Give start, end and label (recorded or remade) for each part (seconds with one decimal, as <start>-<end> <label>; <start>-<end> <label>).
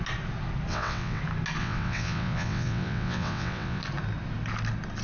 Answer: 0.0-0.7 recorded; 0.7-1.2 remade; 1.2-1.6 recorded; 1.6-3.8 remade; 3.8-5.0 recorded